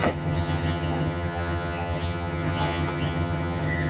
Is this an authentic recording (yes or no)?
no